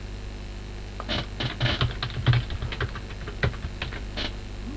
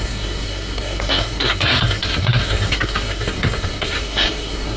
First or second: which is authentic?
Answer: first